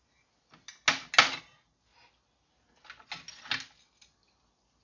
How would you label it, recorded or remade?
recorded